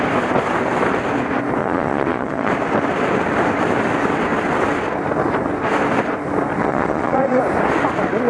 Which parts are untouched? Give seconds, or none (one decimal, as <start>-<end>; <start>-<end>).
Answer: 0.0-1.6; 2.5-6.6; 7.4-8.3